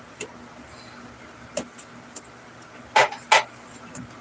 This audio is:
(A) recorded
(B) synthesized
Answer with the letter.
A